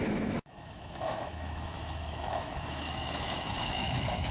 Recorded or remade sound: remade